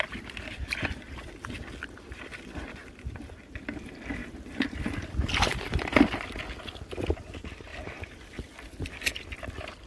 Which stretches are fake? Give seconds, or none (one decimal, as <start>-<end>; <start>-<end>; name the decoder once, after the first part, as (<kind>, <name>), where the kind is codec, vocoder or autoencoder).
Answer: 4.2-4.7 (vocoder, BigVGAN v2)